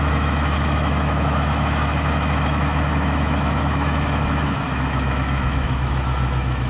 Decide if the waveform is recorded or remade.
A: remade